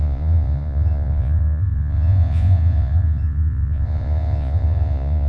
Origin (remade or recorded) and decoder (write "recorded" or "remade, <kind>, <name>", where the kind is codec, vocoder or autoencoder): remade, vocoder, Vocos